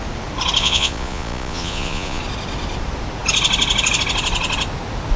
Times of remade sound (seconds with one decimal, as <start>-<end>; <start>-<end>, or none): 0.6-2.2